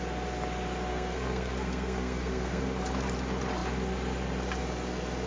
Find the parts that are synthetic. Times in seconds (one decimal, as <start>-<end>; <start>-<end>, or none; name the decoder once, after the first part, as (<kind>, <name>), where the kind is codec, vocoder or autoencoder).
0.9-2.6 (codec, SNAC)